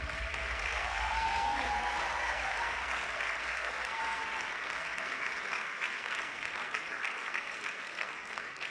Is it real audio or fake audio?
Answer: fake